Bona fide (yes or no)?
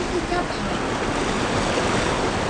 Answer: yes